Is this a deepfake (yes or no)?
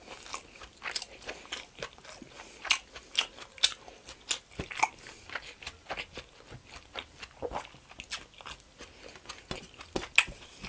no